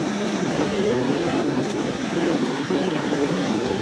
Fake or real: fake